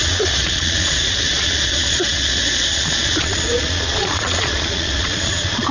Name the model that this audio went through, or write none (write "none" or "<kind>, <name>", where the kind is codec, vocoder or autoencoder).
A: vocoder, Vocos